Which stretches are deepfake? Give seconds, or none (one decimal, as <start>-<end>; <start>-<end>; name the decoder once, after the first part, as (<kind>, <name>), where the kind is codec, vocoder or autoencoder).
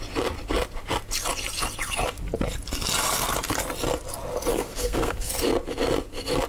4.5-5.3 (codec, SNAC)